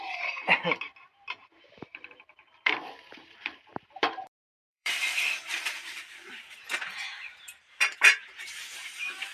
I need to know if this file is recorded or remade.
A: remade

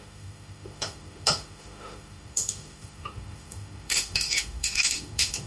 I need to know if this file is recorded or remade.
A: remade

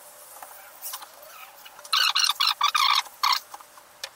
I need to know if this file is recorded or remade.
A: recorded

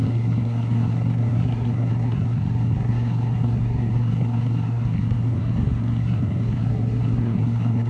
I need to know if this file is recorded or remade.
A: remade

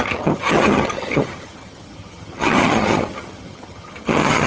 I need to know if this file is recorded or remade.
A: remade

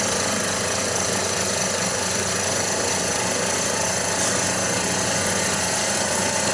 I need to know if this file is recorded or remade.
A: remade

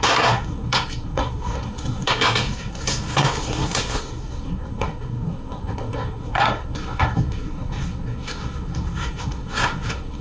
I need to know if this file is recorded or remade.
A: remade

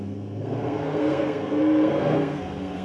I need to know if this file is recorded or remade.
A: remade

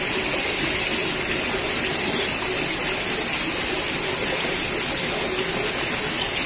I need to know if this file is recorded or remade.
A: recorded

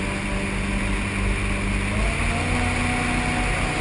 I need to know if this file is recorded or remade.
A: recorded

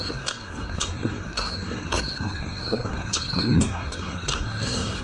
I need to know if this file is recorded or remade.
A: remade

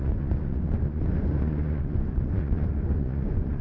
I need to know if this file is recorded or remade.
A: remade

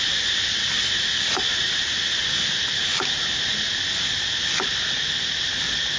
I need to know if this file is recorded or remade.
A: recorded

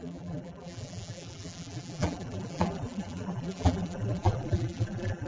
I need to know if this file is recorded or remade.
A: remade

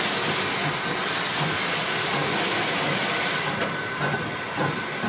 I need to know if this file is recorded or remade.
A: recorded